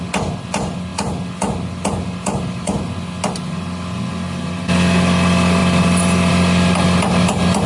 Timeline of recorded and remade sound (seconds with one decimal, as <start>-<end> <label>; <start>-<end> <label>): 0.0-7.7 recorded